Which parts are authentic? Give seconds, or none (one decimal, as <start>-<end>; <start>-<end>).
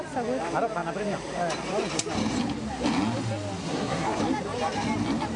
0.0-3.6; 4.2-5.4